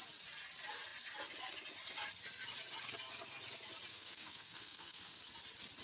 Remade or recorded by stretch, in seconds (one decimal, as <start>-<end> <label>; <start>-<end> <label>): 0.0-3.9 recorded; 3.9-5.2 remade; 5.2-5.8 recorded